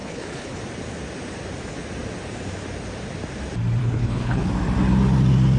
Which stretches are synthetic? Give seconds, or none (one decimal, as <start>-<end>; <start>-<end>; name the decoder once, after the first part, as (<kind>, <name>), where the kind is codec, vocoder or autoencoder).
0.0-0.6 (codec, HILCodec); 3.8-4.5